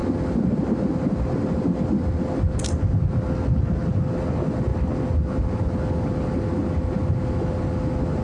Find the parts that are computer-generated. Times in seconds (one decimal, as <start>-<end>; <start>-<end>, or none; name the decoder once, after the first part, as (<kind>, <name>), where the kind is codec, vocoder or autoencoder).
none